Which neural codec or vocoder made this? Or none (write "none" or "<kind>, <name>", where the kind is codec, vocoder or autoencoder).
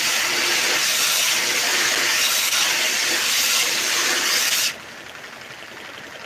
none